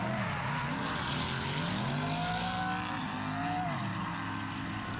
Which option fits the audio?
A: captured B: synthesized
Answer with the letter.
A